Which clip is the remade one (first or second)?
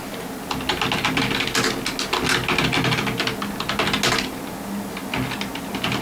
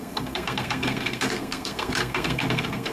second